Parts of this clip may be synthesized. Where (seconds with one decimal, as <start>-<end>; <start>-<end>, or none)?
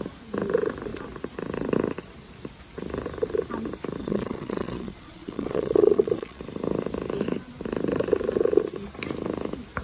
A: 4.0-6.4